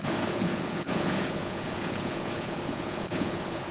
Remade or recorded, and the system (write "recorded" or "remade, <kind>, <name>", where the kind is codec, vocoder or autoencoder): remade, vocoder, Vocos